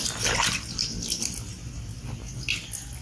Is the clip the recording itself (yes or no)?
yes